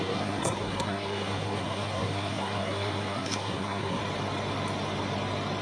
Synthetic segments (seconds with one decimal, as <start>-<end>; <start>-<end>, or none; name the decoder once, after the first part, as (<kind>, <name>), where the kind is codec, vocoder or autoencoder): 0.0-4.0 (codec, SNAC)